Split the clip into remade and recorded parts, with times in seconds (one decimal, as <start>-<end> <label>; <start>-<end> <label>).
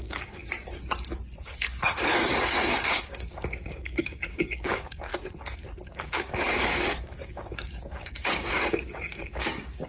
0.0-0.4 remade; 0.4-1.4 recorded; 1.4-5.1 remade; 5.1-5.9 recorded; 5.9-9.9 remade